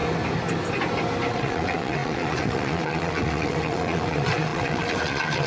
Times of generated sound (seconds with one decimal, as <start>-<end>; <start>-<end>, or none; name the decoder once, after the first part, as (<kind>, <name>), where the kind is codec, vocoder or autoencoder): 1.3-5.5 (vocoder, WaveNeXt)